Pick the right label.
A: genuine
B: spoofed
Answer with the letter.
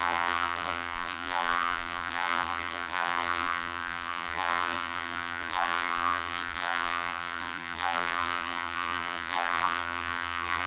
B